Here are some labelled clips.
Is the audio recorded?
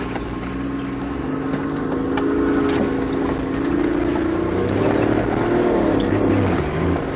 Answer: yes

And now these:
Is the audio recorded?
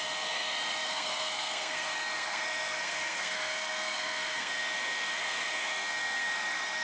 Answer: no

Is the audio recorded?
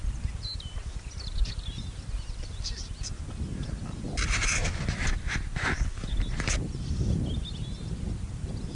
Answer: yes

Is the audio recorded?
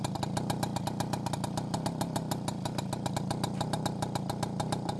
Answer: yes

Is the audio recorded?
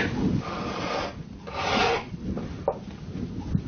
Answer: yes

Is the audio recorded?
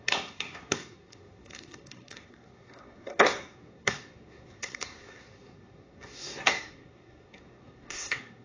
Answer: no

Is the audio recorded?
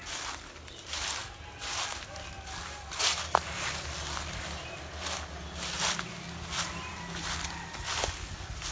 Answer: yes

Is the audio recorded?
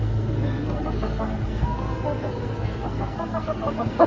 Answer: no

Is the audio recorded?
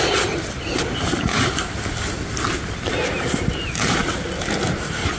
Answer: yes